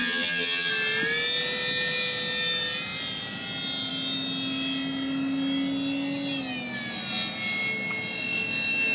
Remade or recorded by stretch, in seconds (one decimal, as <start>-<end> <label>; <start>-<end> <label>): 0.0-0.7 remade; 0.7-8.9 recorded